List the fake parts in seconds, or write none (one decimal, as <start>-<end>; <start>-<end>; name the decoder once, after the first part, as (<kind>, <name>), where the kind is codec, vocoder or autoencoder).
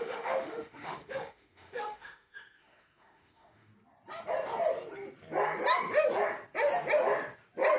0.0-3.7 (autoencoder, DAC-VAE)